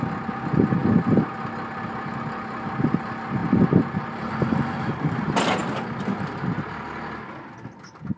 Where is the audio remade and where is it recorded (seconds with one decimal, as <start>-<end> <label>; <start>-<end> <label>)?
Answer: 0.0-0.8 recorded; 0.8-1.3 remade; 1.3-8.2 recorded